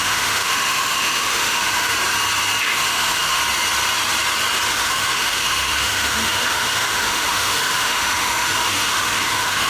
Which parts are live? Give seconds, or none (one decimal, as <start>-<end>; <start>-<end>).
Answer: 1.9-2.6; 3.4-4.7